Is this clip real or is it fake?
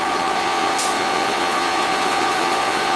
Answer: fake